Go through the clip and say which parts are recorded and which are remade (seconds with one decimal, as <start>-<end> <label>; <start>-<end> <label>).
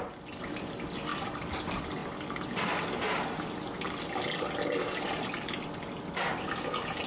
0.0-7.1 recorded